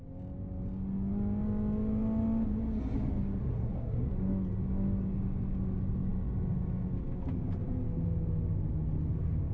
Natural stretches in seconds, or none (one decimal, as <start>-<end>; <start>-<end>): 0.0-3.4; 4.1-9.5

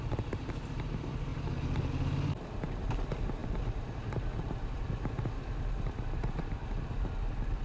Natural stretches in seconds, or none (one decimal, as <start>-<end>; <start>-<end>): 0.0-7.6

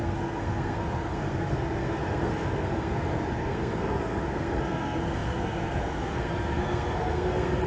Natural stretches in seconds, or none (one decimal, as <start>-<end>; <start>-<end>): none

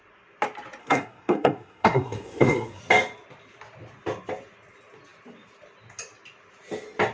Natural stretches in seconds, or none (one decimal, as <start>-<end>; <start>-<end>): 0.0-0.8; 2.8-7.1